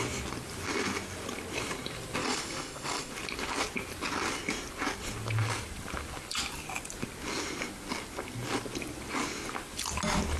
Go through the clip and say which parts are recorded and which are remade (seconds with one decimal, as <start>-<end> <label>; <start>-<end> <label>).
0.0-2.2 recorded; 2.2-3.1 remade; 3.1-10.4 recorded